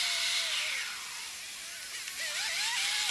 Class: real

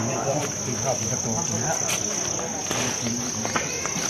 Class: real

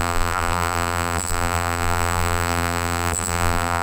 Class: fake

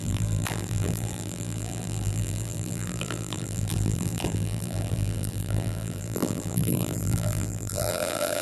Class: fake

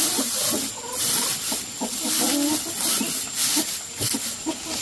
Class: real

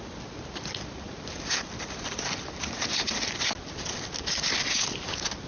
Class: real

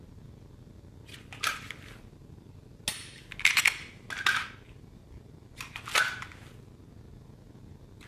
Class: real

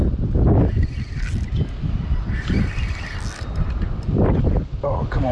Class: real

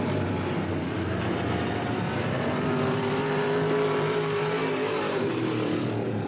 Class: fake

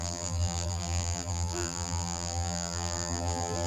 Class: fake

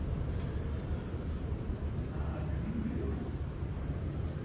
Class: fake